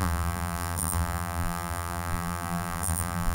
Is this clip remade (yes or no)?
yes